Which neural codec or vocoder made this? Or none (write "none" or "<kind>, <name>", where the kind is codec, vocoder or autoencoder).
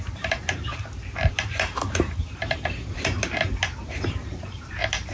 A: vocoder, BigVGAN v2